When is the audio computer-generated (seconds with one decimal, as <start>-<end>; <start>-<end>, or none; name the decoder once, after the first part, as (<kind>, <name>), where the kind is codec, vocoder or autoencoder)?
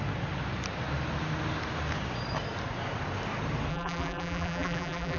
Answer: 3.7-5.2 (vocoder, BigVGAN v2)